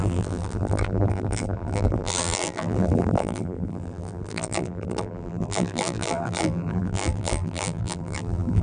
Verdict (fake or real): fake